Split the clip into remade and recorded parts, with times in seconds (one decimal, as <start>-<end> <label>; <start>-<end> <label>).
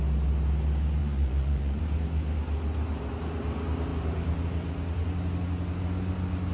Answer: 0.0-1.0 recorded; 1.0-1.8 remade; 1.8-6.5 recorded